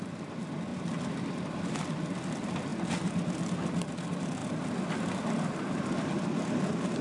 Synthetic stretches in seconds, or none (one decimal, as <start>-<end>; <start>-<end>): none